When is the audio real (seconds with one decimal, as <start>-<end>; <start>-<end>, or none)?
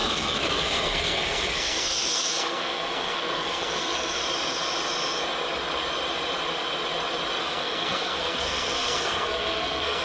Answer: 4.2-7.4